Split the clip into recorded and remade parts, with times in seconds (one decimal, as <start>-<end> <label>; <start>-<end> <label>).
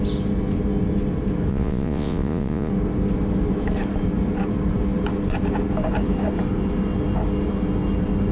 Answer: 0.0-1.5 recorded; 1.5-2.7 remade; 2.7-8.3 recorded